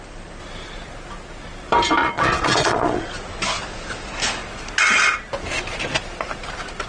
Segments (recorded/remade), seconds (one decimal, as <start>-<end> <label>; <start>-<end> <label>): 0.0-2.0 recorded; 2.0-3.1 remade; 3.1-6.9 recorded